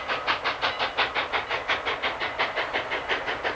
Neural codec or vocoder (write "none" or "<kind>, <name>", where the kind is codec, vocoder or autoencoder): none